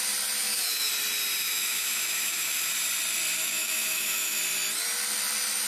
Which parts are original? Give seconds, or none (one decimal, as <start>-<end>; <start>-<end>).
0.0-0.4; 0.9-1.4; 2.7-3.4; 4.4-5.7